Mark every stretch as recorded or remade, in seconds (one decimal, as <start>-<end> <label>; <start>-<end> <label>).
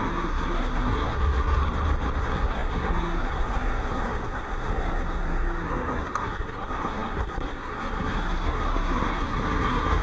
0.0-1.6 remade; 1.6-2.2 recorded; 2.2-10.0 remade